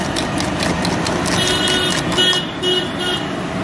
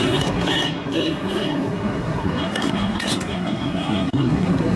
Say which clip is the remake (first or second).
second